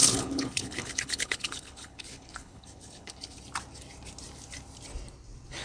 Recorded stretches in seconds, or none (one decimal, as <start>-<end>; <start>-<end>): 3.4-5.6